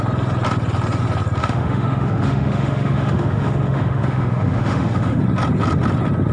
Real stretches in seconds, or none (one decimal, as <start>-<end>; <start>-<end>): 0.0-1.4; 5.2-6.3